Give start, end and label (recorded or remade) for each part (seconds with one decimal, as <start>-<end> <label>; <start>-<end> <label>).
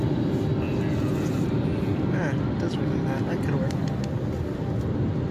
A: 0.0-5.3 recorded